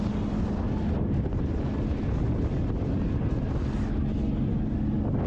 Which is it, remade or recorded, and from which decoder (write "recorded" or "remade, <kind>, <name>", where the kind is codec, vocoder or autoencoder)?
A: recorded